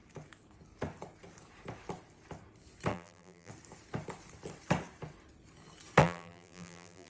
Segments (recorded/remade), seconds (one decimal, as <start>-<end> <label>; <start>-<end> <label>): 0.0-2.9 recorded; 2.9-3.5 remade; 3.5-6.0 recorded; 6.0-7.1 remade